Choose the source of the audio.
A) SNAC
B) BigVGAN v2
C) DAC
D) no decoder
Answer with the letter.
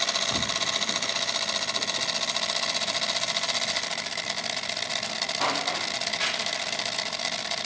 B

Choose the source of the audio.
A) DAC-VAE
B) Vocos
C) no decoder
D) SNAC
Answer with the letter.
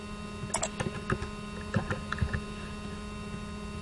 C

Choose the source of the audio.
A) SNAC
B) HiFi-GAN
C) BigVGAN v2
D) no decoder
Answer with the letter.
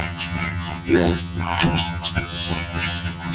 B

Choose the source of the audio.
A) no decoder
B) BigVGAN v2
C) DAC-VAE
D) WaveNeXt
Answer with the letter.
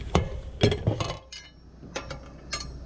A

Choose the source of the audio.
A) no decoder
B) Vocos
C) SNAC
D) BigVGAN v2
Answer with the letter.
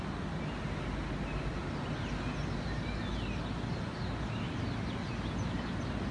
A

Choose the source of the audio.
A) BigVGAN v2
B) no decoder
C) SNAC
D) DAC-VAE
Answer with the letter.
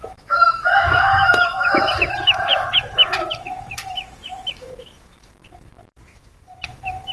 D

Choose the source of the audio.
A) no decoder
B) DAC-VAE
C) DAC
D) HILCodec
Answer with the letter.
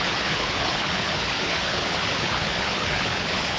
D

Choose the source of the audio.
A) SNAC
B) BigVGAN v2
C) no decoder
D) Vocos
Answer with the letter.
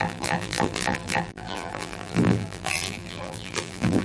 B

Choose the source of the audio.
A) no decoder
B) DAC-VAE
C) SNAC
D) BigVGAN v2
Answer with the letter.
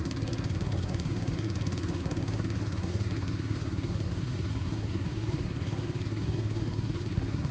C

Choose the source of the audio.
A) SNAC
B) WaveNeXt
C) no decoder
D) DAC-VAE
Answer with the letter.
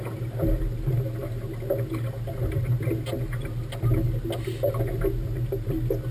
C